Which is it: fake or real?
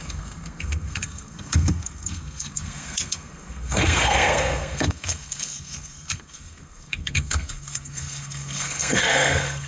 fake